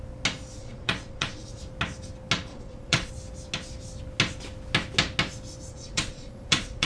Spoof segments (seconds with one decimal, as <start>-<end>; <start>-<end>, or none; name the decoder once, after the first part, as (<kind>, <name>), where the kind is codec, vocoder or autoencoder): 0.6-1.6 (vocoder, Vocos); 2.5-3.1; 5.7-6.9